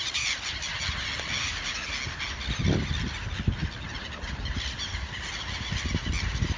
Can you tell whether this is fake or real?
real